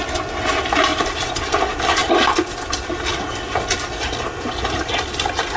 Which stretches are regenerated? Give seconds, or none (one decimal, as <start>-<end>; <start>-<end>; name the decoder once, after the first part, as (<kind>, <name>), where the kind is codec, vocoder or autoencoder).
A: 0.9-1.6 (vocoder, BigVGAN v2)

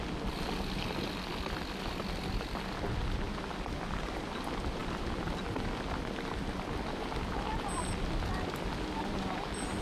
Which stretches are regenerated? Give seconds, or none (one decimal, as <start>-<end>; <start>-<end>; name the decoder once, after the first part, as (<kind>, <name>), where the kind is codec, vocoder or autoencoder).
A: none

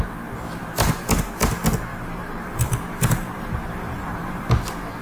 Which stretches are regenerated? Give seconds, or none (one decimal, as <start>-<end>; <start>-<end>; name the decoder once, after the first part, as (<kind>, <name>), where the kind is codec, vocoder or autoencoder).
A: 1.9-4.5 (vocoder, BigVGAN v2)

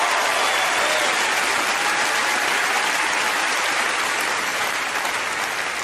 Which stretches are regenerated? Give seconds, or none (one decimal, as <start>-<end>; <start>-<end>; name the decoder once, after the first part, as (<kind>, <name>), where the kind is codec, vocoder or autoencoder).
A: 4.5-5.1 (vocoder, BigVGAN v2)

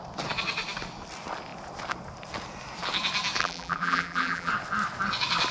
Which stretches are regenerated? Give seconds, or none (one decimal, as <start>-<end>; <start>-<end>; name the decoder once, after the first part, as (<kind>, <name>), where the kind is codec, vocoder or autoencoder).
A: 3.4-4.5 (vocoder, BigVGAN v2)

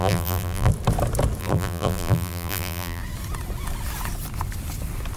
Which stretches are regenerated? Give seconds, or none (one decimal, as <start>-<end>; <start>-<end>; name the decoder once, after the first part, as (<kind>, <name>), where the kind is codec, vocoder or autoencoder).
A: 0.0-0.7 (vocoder, BigVGAN v2); 1.4-3.0

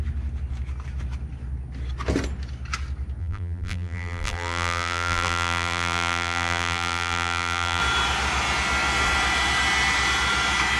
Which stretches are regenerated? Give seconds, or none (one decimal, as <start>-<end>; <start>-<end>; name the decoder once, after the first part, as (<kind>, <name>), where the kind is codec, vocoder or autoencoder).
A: 3.2-7.8 (vocoder, BigVGAN v2)